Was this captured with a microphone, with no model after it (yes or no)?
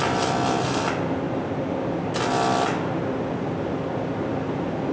yes